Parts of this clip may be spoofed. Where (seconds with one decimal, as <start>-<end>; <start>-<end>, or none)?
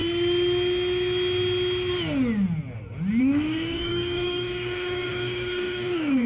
3.2-6.3